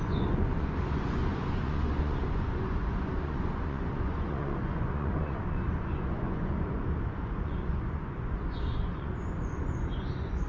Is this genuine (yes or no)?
no